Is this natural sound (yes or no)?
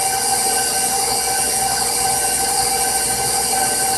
yes